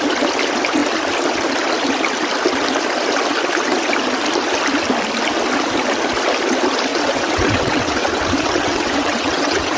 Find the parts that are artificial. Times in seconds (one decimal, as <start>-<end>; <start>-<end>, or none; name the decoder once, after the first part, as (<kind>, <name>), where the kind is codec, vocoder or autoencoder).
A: 6.9-9.8 (vocoder, WaveNeXt)